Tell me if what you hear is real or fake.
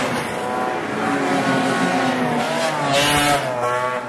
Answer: real